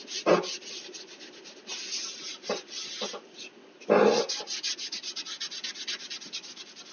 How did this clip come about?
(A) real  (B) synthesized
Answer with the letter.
A